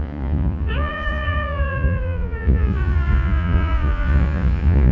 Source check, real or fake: fake